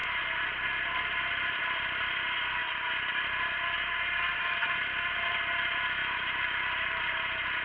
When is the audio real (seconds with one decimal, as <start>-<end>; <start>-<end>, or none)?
0.0-6.0; 7.0-7.6